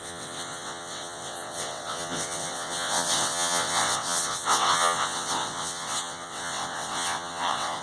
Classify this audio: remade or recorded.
remade